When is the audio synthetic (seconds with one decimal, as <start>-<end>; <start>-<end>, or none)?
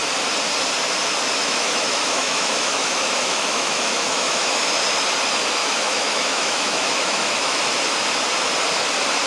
1.4-4.7; 5.6-7.6